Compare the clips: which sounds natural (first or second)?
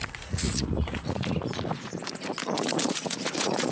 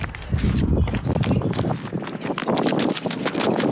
second